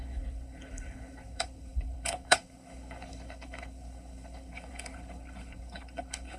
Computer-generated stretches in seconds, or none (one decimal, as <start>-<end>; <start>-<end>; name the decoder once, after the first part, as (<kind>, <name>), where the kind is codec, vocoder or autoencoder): 0.0-6.4 (codec, HILCodec)